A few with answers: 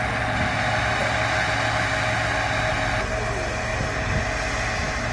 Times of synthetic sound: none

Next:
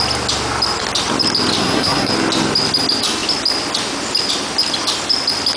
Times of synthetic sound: 1.6-2.1

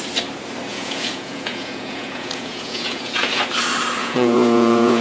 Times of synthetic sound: 0.7-3.4; 4.0-5.0

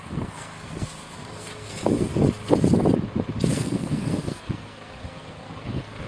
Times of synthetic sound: 0.0-2.1; 3.5-6.1